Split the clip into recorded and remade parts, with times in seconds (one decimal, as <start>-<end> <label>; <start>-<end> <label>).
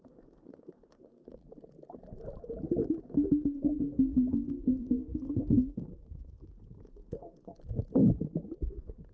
0.0-1.4 remade; 1.4-3.0 recorded; 3.0-3.7 remade; 3.7-4.3 recorded; 4.3-7.5 remade; 7.5-8.6 recorded; 8.6-9.1 remade